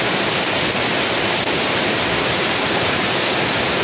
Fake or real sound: real